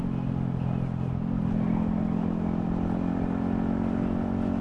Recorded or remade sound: recorded